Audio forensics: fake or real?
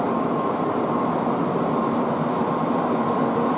fake